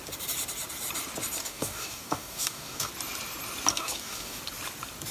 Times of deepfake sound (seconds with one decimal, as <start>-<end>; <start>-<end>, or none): 1.4-2.9; 3.7-4.4